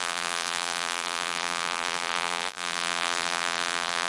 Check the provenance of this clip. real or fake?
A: fake